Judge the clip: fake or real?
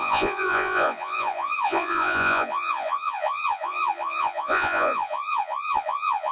fake